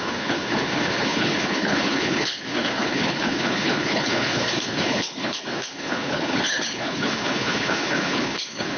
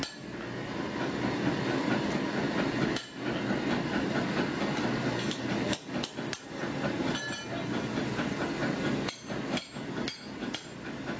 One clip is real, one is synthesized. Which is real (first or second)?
second